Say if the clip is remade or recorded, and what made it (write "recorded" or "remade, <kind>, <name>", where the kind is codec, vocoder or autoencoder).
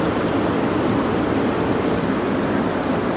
recorded